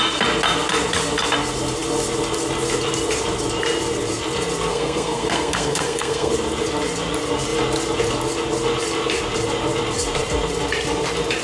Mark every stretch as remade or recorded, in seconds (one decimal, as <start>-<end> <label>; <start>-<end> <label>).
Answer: 0.0-4.7 recorded; 4.7-6.3 remade; 6.3-11.4 recorded